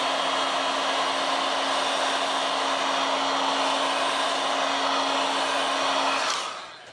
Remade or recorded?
recorded